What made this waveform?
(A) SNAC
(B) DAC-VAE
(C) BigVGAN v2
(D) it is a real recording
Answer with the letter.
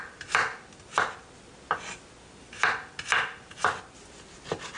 D